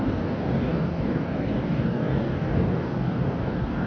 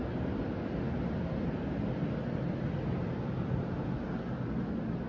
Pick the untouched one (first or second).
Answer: second